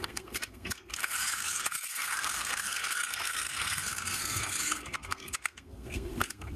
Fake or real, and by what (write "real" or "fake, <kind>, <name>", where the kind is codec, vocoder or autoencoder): fake, codec, SNAC